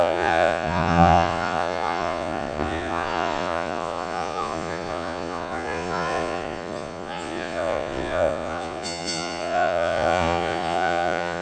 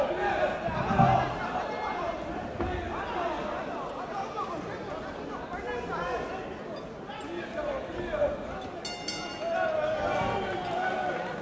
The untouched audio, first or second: second